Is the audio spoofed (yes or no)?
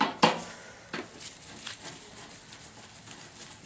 no